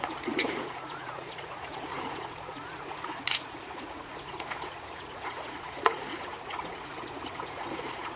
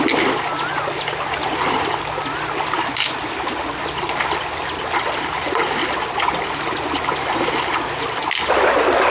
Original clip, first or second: second